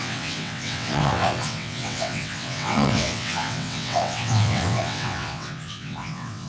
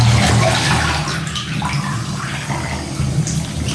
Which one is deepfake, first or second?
first